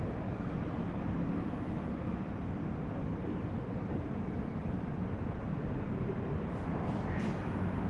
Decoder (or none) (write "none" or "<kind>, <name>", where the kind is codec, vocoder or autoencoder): vocoder, BigVGAN v2